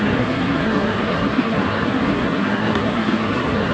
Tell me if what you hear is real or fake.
fake